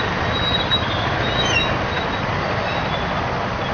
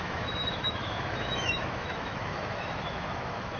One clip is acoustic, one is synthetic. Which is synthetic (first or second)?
second